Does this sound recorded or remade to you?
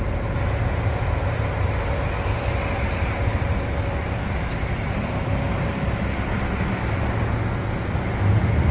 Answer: recorded